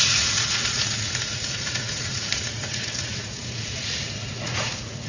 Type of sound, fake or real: fake